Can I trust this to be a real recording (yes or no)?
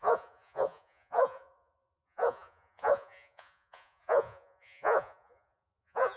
no